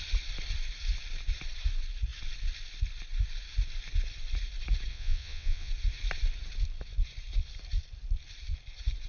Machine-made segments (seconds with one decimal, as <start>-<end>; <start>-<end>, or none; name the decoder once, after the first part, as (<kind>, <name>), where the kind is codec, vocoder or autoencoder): 4.9-5.7 (vocoder, WaveNeXt)

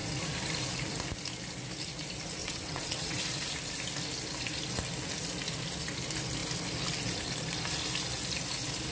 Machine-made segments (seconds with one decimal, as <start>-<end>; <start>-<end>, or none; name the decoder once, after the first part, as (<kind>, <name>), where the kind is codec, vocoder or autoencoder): 2.4-3.2 (vocoder, WaveNeXt)